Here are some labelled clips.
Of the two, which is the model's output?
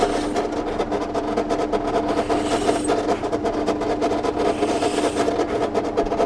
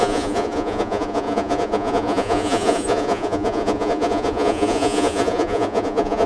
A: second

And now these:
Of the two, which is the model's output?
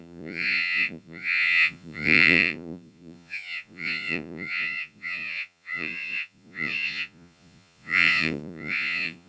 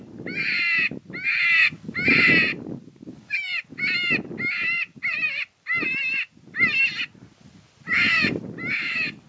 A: first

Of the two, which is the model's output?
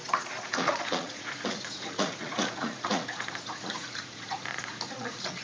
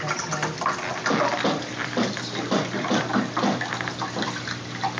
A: first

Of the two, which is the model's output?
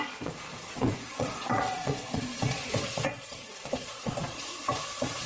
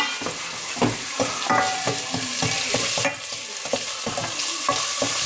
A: first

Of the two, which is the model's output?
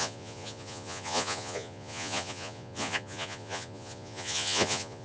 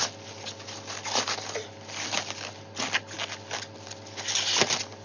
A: first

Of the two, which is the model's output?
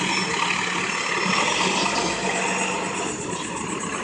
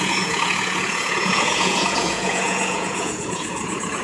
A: second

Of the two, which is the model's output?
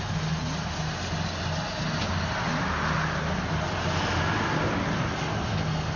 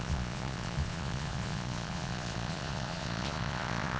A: second